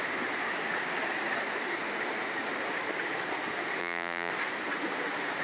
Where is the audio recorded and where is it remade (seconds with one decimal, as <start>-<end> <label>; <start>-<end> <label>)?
0.0-3.8 recorded; 3.8-4.3 remade; 4.3-5.4 recorded